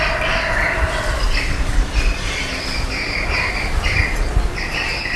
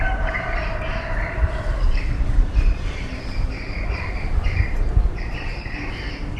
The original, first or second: first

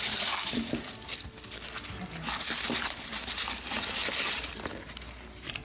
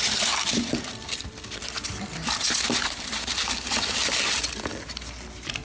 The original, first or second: first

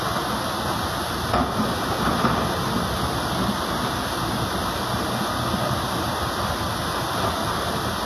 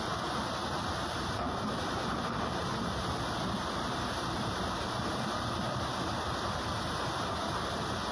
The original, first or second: first